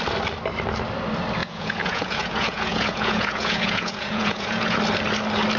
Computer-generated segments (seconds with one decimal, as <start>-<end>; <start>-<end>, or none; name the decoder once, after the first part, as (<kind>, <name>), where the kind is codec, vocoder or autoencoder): 1.4-4.8 (vocoder, Vocos)